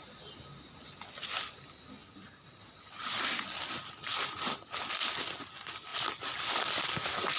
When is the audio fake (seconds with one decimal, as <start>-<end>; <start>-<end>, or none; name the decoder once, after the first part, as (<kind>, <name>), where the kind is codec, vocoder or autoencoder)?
none